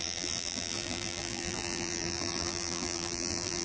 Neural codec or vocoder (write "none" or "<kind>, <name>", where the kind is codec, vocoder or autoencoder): vocoder, BigVGAN v2